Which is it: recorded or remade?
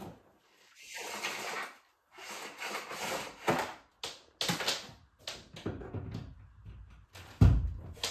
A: recorded